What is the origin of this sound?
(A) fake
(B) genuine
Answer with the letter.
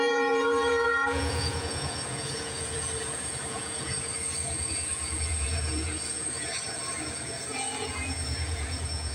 A